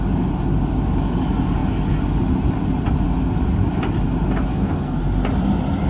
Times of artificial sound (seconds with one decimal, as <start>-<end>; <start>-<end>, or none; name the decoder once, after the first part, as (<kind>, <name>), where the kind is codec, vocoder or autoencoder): 4.5-5.0 (codec, SNAC)